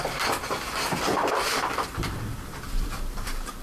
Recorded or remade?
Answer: remade